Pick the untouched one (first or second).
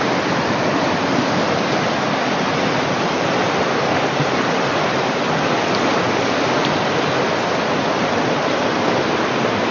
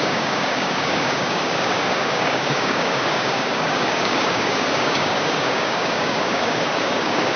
first